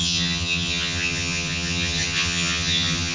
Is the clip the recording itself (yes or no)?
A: no